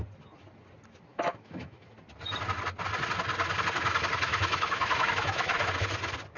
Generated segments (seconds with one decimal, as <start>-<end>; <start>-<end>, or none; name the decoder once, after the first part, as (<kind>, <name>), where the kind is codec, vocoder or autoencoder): 1.1-1.9 (autoencoder, DAC-VAE); 4.3-5.7